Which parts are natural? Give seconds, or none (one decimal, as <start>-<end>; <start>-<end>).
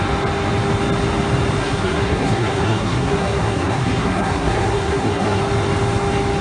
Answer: 0.0-1.6; 5.4-6.4